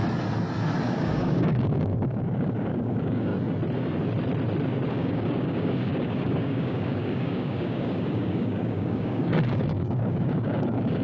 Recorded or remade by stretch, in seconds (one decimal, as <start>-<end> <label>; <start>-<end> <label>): 0.0-0.8 recorded; 0.8-3.3 remade; 3.3-4.9 recorded; 4.9-11.0 remade